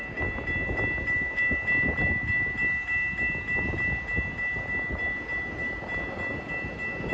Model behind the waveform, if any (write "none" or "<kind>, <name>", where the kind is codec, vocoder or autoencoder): none